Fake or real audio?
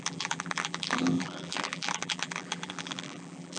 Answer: fake